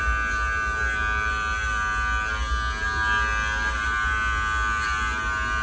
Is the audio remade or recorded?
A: recorded